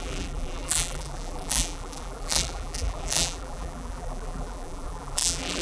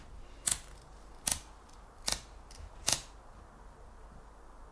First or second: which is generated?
first